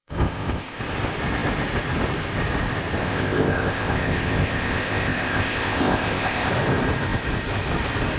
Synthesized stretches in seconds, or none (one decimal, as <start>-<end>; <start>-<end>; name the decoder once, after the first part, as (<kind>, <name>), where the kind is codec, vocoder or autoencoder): 0.0-0.8 (codec, ZipCodec); 3.0-6.5